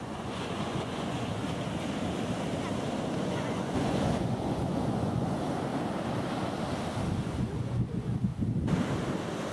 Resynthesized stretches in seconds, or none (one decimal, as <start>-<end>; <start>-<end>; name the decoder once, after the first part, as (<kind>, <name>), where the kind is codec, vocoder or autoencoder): 0.0-1.4 (vocoder, Vocos); 3.2-5.7; 7.2-8.3